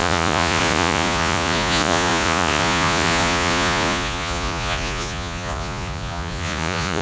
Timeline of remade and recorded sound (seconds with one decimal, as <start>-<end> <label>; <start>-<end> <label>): 0.0-7.0 remade